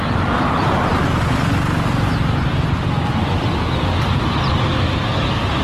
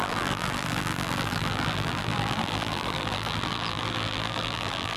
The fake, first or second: second